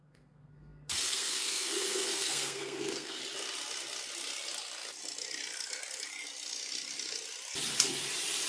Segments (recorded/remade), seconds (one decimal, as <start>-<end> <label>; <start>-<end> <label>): 0.0-3.2 remade; 3.2-8.5 recorded